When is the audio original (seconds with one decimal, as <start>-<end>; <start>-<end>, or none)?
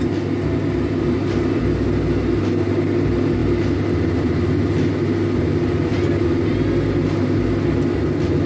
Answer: 0.0-8.5